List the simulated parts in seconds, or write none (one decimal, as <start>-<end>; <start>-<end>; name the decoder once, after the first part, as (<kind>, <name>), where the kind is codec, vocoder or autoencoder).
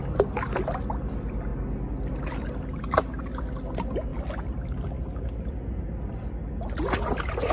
none